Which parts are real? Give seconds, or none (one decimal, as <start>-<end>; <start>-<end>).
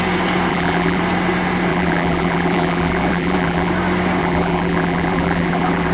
0.0-0.5; 1.0-1.7; 3.7-4.2